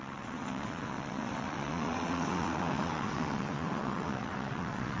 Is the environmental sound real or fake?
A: fake